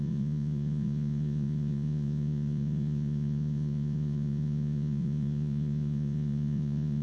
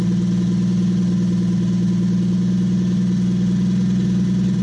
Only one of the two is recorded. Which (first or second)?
second